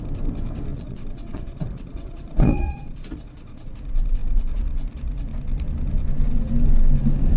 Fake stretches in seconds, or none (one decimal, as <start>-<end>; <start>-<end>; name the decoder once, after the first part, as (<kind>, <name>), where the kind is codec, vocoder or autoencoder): 0.7-3.7 (vocoder, Vocos)